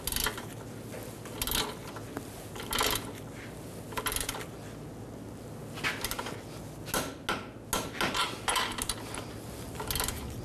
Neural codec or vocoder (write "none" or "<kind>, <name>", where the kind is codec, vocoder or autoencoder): none